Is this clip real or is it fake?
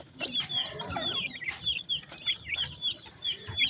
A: real